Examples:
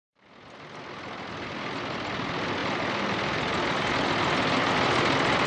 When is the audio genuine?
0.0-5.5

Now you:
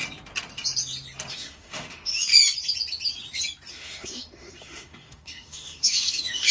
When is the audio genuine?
0.0-1.3; 2.3-3.7

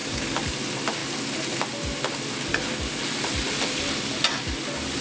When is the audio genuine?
0.5-5.0

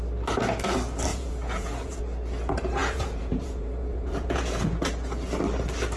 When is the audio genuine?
0.0-1.1; 2.0-2.8; 4.9-6.0

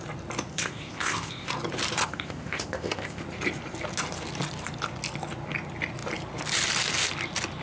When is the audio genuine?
0.0-0.5; 1.5-2.0; 3.2-7.6

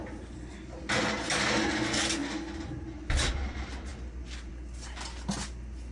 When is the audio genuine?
0.0-5.9